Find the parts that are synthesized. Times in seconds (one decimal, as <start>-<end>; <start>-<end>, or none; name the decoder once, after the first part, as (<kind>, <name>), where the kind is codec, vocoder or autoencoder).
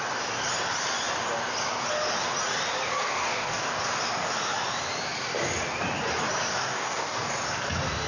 3.0-3.8 (codec, DAC); 6.5-7.3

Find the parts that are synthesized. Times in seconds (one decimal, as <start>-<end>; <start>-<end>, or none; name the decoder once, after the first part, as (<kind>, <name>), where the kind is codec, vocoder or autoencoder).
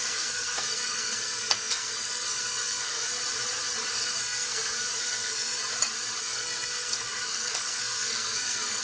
0.0-3.1 (codec, SNAC); 3.9-5.6; 6.2-8.8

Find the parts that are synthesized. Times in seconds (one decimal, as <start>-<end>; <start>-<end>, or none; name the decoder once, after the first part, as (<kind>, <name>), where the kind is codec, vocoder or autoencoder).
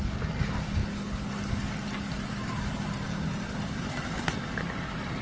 0.8-1.3 (codec, HILCodec)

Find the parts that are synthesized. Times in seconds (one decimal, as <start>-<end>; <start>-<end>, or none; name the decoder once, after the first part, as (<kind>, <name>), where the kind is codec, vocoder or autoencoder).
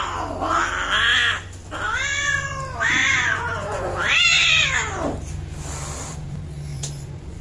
3.0-3.9 (vocoder, Vocos); 6.7-7.4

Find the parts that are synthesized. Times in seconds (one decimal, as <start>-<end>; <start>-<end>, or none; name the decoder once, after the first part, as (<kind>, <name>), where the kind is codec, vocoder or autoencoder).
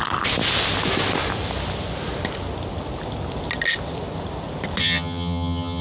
4.8-5.8 (vocoder, HiFi-GAN)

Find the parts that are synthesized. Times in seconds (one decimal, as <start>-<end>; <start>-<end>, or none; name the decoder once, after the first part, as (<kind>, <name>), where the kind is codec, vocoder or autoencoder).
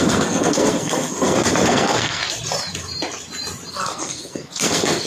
0.0-2.2 (codec, SNAC); 3.7-5.1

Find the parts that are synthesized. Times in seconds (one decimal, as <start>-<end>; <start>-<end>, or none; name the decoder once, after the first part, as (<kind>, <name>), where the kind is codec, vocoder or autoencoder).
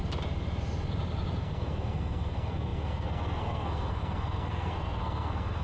1.4-5.6 (codec, SNAC)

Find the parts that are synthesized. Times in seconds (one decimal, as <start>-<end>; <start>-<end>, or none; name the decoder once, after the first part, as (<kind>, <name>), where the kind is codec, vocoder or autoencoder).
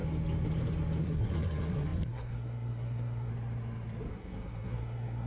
1.0-3.3 (codec, SNAC); 4.1-5.3